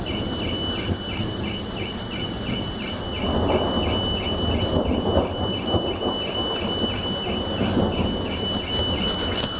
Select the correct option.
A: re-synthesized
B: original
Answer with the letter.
B